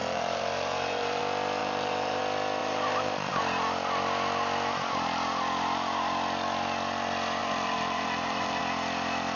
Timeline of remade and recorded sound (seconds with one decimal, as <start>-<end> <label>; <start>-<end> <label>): 0.0-1.2 remade; 1.2-1.6 recorded; 1.6-2.2 remade; 2.2-2.6 recorded; 2.6-3.3 remade; 3.3-7.4 recorded; 7.4-8.6 remade; 8.6-9.4 recorded